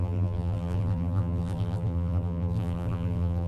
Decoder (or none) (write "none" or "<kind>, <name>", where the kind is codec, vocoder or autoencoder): vocoder, BigVGAN v2